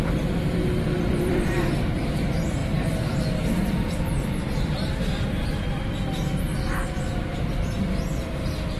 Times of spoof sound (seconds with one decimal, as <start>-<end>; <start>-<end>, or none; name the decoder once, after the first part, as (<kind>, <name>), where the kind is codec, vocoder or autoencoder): 0.0-8.8 (vocoder, BigVGAN v2)